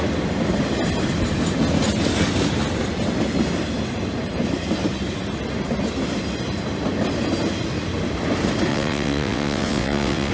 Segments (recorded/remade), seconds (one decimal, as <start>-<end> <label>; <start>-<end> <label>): 0.0-8.7 recorded; 8.7-10.3 remade